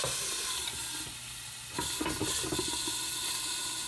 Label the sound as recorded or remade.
recorded